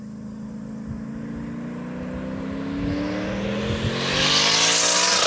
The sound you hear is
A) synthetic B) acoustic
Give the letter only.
B